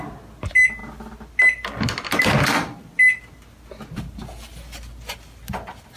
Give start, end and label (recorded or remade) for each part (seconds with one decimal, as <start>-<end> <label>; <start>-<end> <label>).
0.0-6.0 recorded